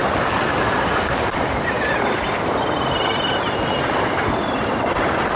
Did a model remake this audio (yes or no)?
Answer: no